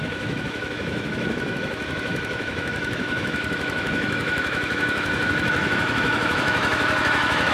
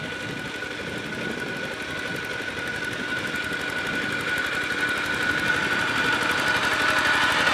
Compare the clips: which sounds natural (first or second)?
second